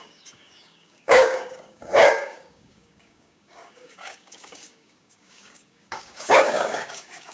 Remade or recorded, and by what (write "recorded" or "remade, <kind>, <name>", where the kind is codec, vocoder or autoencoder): remade, codec, DAC